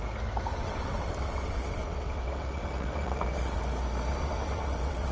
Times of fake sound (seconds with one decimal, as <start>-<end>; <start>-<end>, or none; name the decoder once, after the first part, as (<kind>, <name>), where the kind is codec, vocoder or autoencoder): 0.5-3.6 (vocoder, WaveNeXt); 4.1-5.1